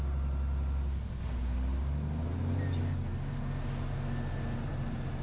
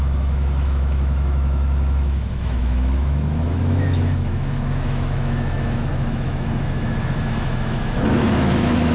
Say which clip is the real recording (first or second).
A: first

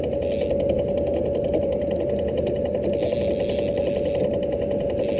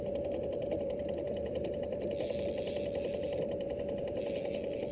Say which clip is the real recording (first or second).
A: first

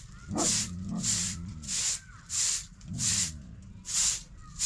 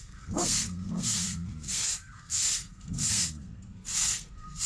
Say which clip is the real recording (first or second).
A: first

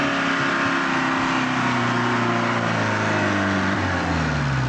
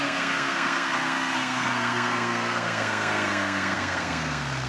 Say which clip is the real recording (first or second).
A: first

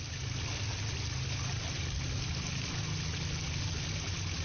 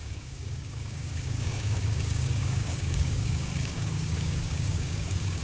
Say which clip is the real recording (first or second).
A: first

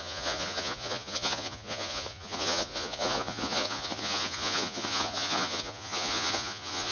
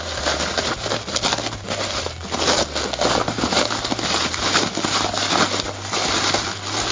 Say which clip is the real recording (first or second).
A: second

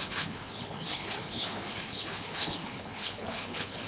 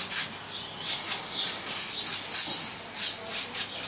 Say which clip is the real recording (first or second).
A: second